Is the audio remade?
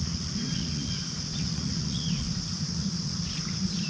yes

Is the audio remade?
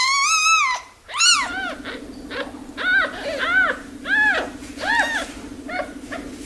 no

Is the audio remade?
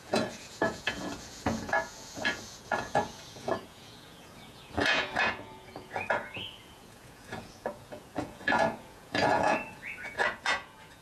yes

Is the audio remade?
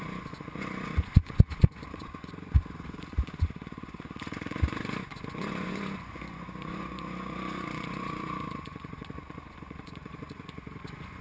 yes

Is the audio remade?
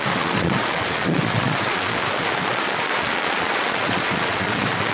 yes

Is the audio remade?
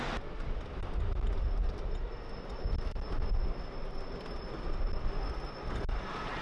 no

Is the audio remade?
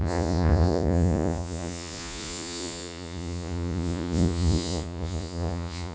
yes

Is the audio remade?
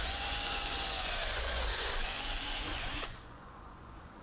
yes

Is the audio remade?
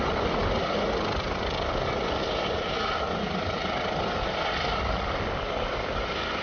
no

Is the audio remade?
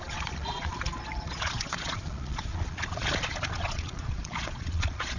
yes